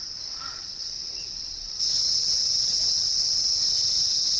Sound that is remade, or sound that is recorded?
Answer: remade